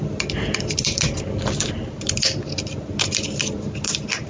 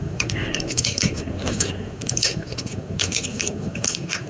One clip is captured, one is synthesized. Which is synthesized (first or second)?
second